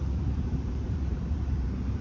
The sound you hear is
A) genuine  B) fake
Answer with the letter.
B